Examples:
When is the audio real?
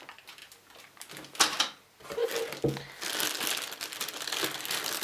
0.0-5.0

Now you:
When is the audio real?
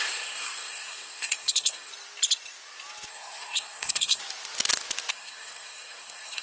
1.9-3.1; 4.2-5.1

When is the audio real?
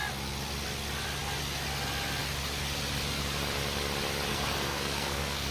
0.0-4.3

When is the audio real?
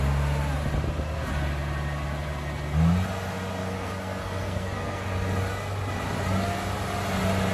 0.0-3.6; 5.1-7.5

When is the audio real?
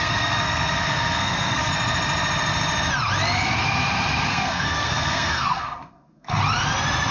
1.7-4.3; 6.4-7.1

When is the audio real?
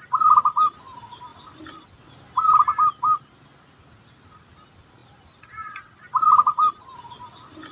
0.0-7.7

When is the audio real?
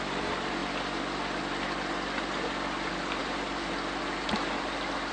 0.0-5.1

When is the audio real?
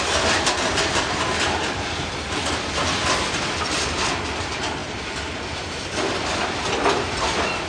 0.0-7.7